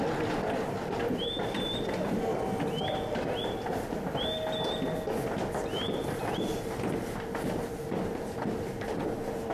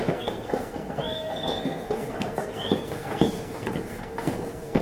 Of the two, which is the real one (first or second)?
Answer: first